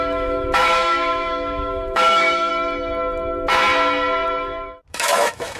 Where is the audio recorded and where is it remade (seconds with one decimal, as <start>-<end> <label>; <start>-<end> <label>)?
0.0-2.5 remade; 2.5-4.9 recorded; 4.9-5.6 remade